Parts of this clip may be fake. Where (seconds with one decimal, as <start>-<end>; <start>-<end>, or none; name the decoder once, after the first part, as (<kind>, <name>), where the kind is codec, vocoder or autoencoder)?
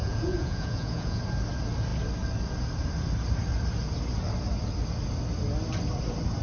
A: 0.0-1.2 (vocoder, Vocos)